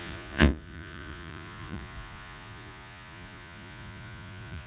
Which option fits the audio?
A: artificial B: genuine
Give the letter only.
A